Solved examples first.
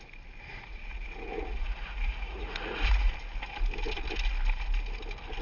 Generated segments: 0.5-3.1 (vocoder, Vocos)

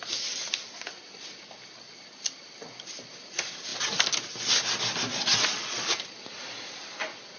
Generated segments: 5.1-5.8 (vocoder, Vocos)

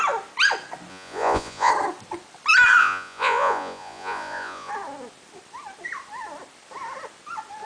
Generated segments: 0.9-1.7 (vocoder, Vocos); 2.8-4.7

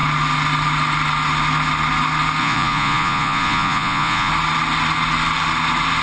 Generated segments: 2.4-4.3 (vocoder, Vocos)

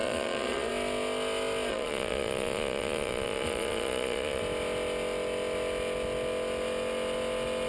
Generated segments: 0.0-0.7 (vocoder, Vocos); 1.7-4.4

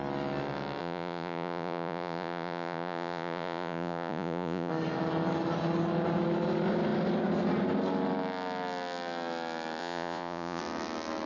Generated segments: 0.8-4.7 (vocoder, Vocos); 9.8-10.6

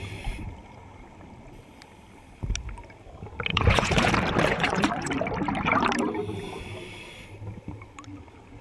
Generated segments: 3.5-4.1 (vocoder, Vocos); 4.5-5.1